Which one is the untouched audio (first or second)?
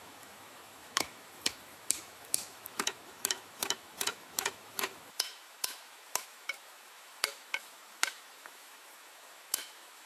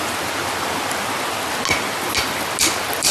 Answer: second